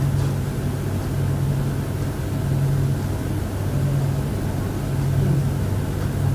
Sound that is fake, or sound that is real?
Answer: real